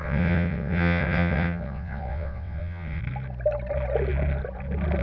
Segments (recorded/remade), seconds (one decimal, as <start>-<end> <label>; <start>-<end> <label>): 0.0-3.0 remade; 3.0-5.0 recorded